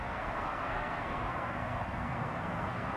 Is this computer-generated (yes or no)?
yes